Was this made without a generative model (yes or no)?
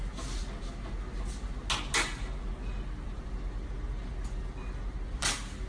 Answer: yes